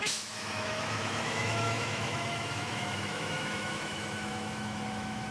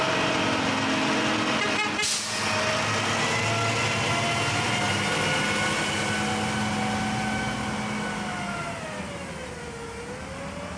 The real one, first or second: second